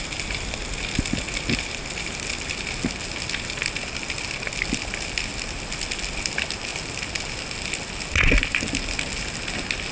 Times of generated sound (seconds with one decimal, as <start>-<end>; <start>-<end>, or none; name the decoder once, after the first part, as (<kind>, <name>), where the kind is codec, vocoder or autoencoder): none